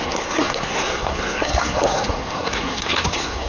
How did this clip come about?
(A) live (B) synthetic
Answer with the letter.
B